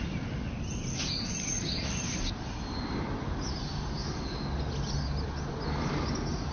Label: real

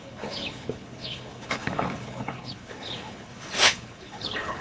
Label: fake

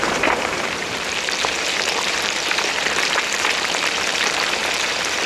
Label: fake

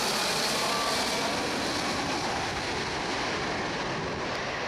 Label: real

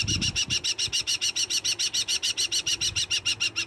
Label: real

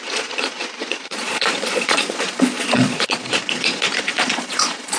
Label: fake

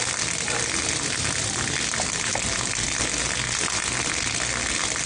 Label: real